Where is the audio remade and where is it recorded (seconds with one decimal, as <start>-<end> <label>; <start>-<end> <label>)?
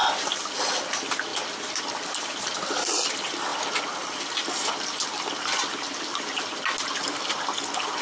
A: 0.0-0.6 remade; 0.6-8.0 recorded